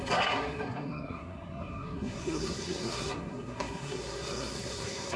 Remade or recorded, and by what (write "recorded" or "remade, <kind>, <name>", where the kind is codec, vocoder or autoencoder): remade, codec, SNAC